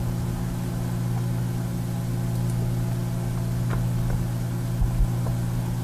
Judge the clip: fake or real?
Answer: real